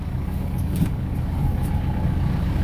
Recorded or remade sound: remade